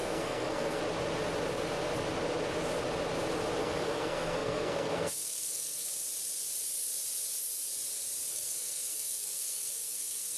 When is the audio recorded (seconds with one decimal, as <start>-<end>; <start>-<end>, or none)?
0.8-3.6; 5.9-8.3

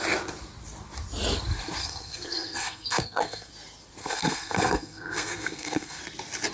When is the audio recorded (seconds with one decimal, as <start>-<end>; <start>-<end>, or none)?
0.0-1.8; 3.5-4.0; 6.0-6.5

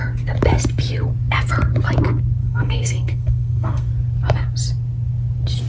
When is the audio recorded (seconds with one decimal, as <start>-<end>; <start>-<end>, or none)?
0.0-2.4; 3.9-5.7

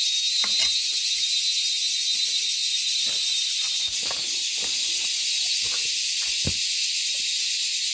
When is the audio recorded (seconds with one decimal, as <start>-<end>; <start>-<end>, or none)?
0.0-7.9

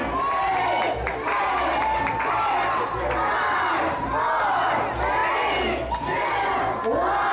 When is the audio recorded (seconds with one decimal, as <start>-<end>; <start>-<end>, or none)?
0.0-7.3

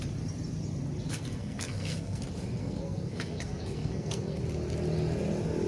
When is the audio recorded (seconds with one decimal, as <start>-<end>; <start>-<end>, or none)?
0.0-1.1; 2.2-2.6; 4.4-5.7

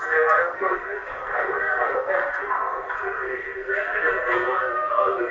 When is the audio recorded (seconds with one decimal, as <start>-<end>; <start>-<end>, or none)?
none